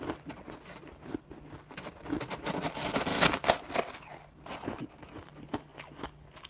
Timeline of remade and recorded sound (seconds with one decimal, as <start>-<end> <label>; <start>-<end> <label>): 0.0-6.5 recorded